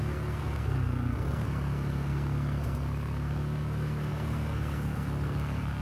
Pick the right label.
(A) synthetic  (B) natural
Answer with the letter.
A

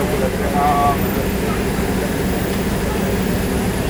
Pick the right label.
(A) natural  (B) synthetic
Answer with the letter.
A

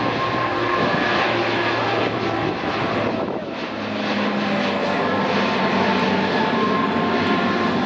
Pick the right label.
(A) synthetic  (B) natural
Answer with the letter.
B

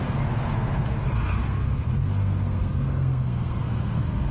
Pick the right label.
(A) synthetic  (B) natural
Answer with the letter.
A